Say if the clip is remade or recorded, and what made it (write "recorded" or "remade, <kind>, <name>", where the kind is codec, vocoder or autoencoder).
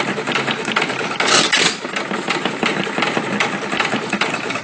recorded